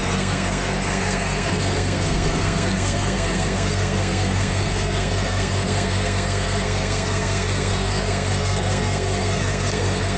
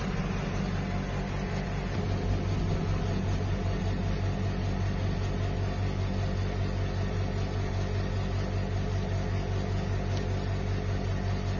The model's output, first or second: first